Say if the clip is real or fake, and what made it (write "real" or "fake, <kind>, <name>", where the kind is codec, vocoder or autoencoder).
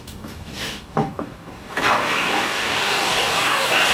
fake, codec, DAC